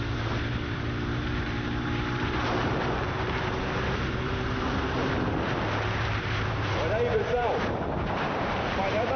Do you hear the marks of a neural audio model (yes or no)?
yes